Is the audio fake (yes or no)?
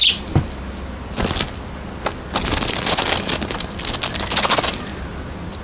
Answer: no